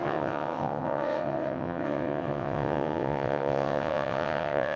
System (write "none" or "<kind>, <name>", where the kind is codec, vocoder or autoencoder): vocoder, WaveNeXt